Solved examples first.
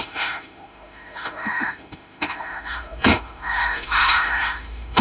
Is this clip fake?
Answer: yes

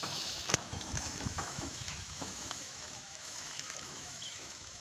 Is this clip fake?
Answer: yes